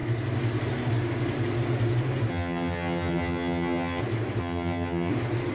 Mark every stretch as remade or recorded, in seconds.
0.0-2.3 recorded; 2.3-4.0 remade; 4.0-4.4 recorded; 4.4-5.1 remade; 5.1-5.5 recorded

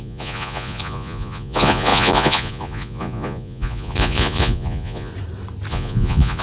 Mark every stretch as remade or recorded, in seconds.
0.0-5.1 remade; 5.1-5.7 recorded; 5.7-6.4 remade